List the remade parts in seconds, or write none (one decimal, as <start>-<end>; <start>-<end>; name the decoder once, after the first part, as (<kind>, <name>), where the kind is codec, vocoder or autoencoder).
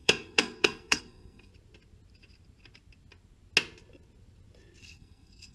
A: 0.0-1.5 (codec, SNAC); 4.8-5.5